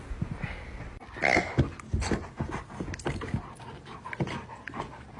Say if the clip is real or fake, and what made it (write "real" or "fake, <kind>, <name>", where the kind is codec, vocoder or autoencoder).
real